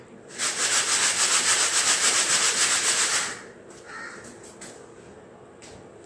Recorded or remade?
recorded